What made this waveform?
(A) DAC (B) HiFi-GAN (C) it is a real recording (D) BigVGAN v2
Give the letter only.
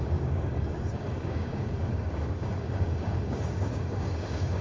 A